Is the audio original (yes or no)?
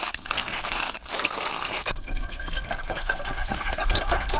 no